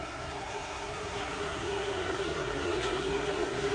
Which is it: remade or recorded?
remade